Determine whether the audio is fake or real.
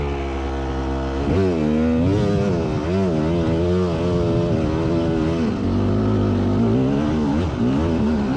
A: real